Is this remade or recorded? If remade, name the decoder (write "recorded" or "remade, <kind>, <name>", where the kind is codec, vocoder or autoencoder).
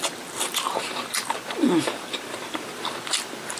remade, vocoder, BigVGAN v2